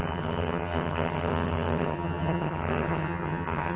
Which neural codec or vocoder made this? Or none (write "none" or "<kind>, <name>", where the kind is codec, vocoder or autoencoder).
vocoder, HiFi-GAN